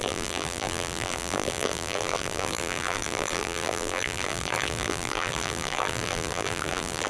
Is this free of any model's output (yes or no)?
no